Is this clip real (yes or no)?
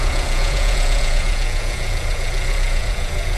no